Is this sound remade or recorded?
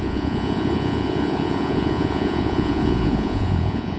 remade